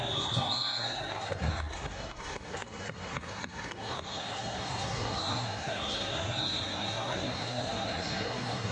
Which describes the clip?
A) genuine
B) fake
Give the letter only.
B